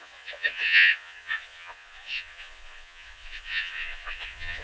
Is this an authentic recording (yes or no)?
no